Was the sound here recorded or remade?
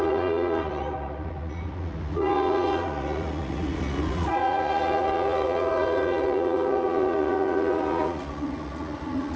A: remade